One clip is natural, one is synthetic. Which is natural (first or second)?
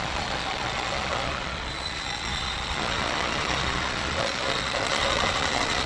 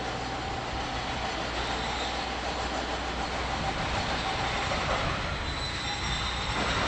second